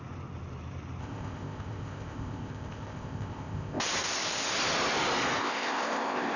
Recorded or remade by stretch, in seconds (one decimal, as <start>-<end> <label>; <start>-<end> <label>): 0.0-1.0 recorded; 1.0-3.8 remade; 3.8-5.4 recorded; 5.4-6.4 remade